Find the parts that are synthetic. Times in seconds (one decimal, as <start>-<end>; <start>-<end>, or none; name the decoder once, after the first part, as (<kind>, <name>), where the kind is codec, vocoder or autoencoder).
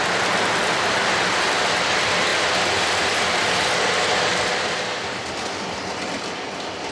none